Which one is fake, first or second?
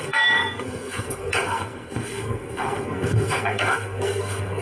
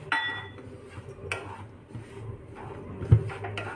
first